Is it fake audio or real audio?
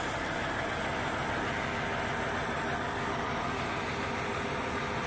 real